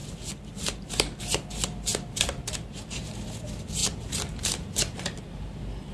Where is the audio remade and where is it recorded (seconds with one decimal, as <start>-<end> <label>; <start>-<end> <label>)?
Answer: 0.0-5.9 recorded